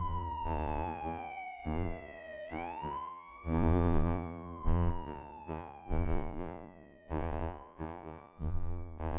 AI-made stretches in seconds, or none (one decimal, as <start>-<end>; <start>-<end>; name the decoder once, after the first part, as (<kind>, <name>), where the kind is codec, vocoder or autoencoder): 0.0-9.2 (vocoder, Vocos)

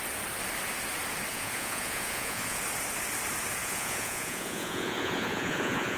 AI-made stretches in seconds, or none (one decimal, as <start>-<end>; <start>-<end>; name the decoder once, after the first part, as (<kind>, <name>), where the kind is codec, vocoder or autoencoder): 1.3-2.6 (vocoder, Vocos); 3.6-6.0